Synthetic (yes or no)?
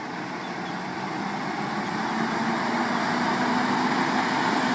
no